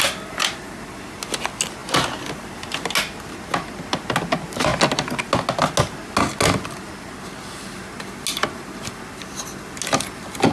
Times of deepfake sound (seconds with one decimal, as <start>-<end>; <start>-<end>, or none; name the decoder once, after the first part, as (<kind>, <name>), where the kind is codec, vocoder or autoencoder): none